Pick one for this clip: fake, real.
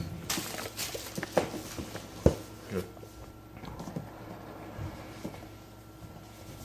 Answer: real